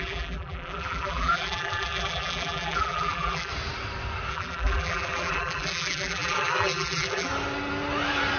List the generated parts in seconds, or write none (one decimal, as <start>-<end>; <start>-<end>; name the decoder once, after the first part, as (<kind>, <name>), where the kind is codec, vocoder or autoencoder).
0.0-3.5 (vocoder, BigVGAN v2); 4.3-7.3